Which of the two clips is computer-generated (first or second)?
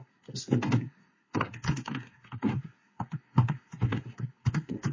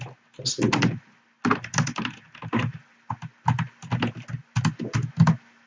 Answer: first